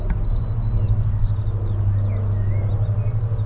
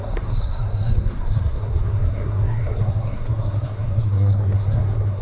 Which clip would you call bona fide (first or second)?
first